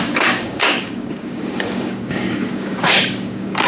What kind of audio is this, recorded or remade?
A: remade